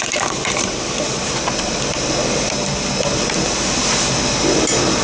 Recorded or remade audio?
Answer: remade